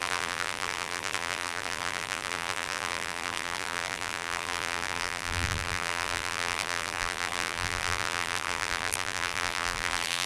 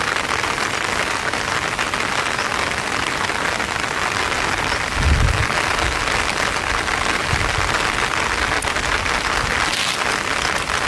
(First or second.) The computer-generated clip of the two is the first